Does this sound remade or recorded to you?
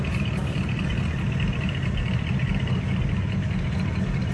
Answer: remade